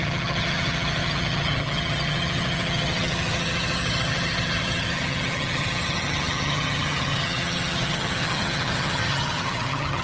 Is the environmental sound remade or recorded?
remade